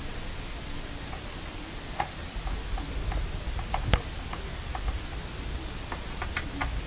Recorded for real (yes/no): yes